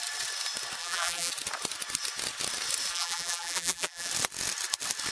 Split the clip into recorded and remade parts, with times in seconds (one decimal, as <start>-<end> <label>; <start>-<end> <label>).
0.0-0.8 recorded; 0.8-1.3 remade; 1.3-2.9 recorded; 2.9-4.1 remade; 4.1-5.1 recorded

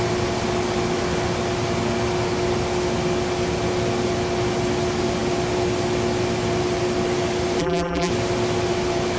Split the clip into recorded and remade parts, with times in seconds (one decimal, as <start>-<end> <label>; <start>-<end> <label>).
0.0-7.6 recorded; 7.6-8.1 remade; 8.1-9.2 recorded